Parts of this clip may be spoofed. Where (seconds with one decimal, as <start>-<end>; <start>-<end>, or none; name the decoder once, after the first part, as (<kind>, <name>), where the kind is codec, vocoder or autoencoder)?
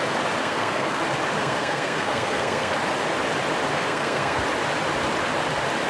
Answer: 0.4-1.0 (codec, SNAC); 1.4-2.7; 3.7-4.4